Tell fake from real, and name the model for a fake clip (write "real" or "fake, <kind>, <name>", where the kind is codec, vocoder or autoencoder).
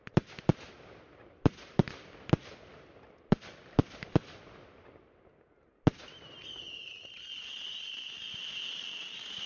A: real